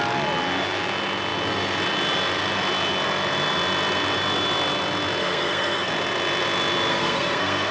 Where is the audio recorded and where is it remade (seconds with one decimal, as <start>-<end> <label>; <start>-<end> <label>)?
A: 0.0-5.2 recorded; 5.2-5.9 remade; 5.9-6.9 recorded; 6.9-7.7 remade